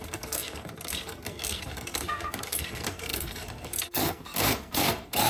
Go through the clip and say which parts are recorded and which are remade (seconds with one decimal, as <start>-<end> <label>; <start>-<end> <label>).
0.0-5.3 remade